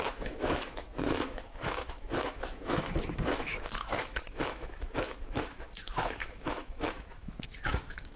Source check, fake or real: fake